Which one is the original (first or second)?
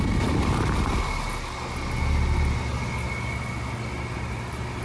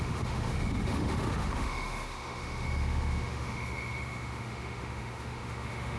first